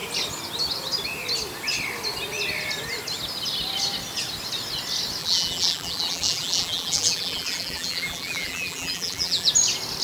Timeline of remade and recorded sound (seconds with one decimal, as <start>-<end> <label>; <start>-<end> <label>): 0.0-5.2 recorded; 5.2-9.5 remade; 9.5-10.0 recorded